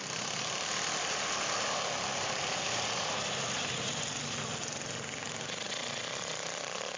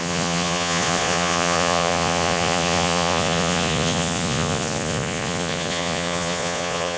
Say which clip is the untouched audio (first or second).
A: first